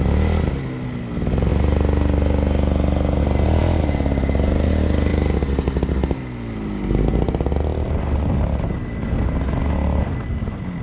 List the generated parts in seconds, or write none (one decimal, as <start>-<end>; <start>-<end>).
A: none